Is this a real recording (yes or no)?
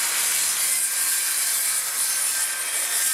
yes